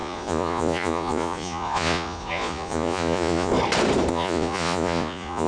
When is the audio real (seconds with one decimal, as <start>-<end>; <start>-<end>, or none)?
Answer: 3.5-4.1